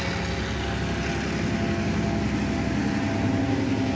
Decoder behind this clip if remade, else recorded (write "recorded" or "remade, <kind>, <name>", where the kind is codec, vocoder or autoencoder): recorded